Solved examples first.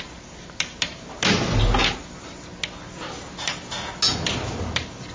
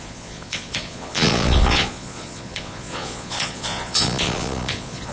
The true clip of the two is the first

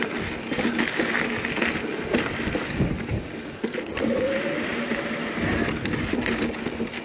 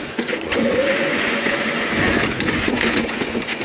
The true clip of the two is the first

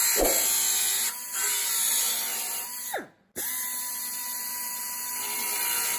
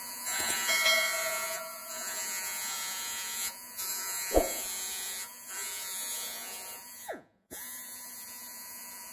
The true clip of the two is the first